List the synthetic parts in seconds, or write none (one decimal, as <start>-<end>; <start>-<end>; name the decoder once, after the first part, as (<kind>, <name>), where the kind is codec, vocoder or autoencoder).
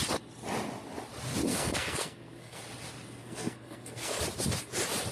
1.5-2.6 (codec, SNAC); 3.2-4.2